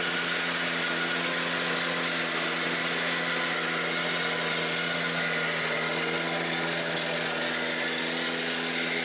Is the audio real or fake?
real